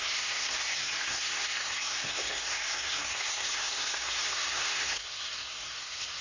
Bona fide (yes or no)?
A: no